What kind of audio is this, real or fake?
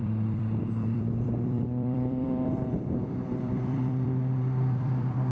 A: fake